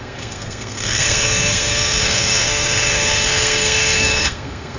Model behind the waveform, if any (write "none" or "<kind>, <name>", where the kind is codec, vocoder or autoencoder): codec, SNAC